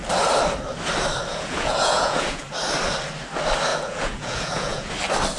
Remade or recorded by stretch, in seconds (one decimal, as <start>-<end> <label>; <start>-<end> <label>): 0.0-1.3 recorded; 1.3-2.4 remade; 2.4-3.7 recorded; 3.7-4.9 remade; 4.9-5.4 recorded